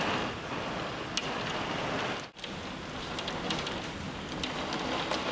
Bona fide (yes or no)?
yes